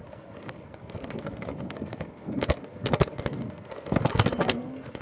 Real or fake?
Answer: fake